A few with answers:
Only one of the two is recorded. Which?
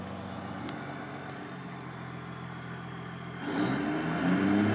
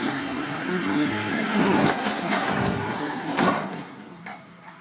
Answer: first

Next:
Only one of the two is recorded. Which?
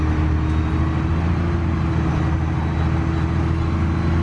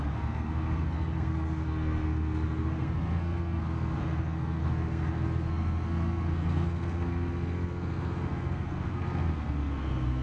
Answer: first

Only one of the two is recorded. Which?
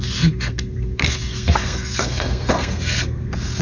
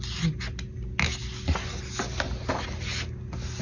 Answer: second